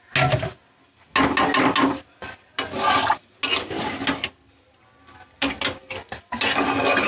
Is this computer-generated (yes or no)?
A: no